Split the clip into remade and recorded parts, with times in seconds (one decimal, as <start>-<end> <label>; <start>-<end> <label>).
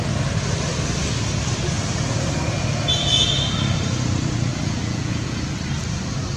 0.0-4.5 recorded; 4.5-5.4 remade; 5.4-6.4 recorded